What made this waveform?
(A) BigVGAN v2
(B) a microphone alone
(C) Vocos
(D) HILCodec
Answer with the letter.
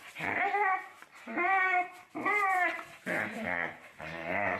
A